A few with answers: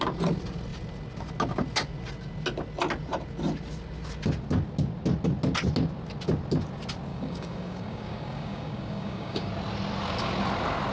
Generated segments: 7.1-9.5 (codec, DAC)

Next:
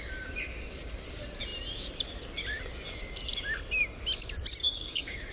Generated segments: 4.6-5.3 (codec, DAC)

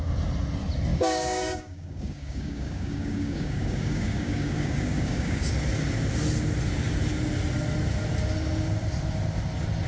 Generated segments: 0.9-5.5 (codec, DAC)

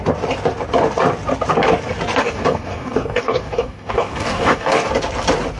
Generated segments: 2.2-4.9 (codec, DAC)

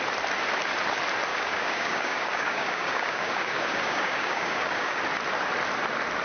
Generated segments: 1.3-5.0 (codec, DAC)

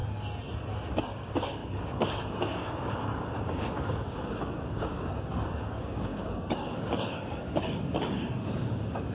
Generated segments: 1.0-9.1 (codec, DAC)

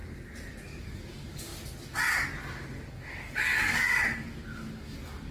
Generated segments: 0.8-1.5 (codec, DAC); 2.9-5.3

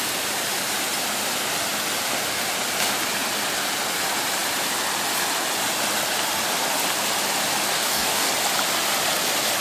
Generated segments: 7.7-8.3 (codec, DAC)